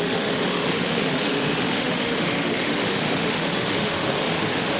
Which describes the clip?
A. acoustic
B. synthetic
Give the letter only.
B